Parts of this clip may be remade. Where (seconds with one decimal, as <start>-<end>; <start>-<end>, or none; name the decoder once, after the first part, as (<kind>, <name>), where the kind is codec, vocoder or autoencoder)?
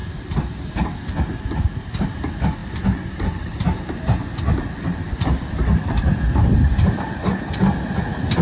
0.0-0.7 (vocoder, BigVGAN v2); 2.6-7.6